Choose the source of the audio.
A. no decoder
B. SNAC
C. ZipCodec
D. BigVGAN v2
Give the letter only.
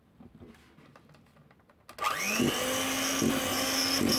A